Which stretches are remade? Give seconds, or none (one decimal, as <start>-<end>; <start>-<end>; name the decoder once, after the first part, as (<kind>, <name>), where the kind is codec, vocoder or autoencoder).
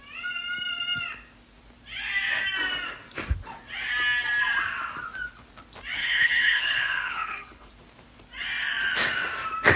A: 6.0-7.7 (codec, HILCodec)